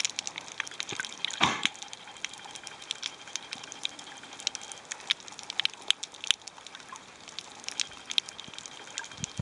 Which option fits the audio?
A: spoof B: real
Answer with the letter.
B